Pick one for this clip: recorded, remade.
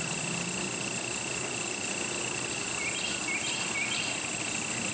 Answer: recorded